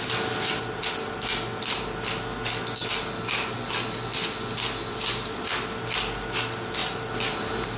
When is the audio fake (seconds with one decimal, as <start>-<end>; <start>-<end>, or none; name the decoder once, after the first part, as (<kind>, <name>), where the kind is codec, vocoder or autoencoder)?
none